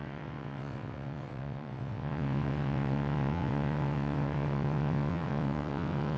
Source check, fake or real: fake